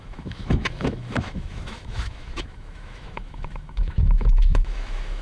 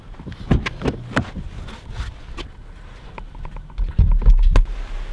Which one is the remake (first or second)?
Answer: first